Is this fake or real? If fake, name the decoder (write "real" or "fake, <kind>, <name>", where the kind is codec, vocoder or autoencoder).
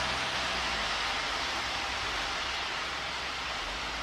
real